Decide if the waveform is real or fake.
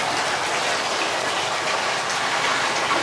real